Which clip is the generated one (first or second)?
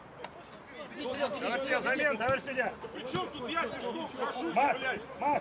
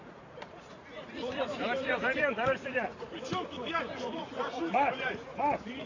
second